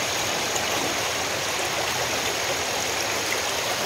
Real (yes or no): yes